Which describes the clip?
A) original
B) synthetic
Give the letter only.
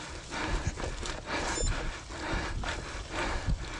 A